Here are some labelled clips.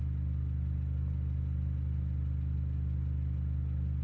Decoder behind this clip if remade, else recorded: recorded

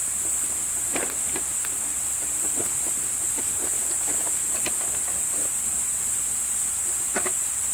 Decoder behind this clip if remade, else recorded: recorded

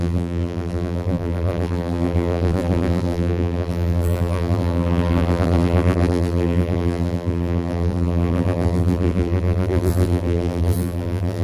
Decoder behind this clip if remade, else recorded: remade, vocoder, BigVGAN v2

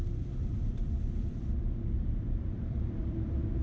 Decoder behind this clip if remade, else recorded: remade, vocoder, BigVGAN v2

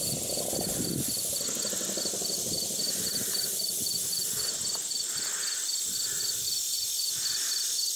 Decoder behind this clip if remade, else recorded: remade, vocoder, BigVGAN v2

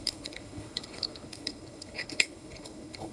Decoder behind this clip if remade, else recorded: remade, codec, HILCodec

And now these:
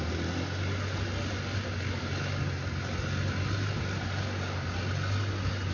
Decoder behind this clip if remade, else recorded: recorded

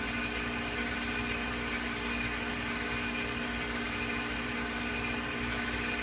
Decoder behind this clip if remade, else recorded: recorded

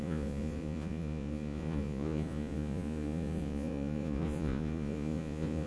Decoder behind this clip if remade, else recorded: remade, vocoder, Vocos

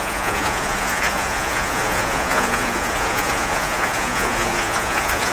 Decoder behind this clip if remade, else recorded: remade, vocoder, Vocos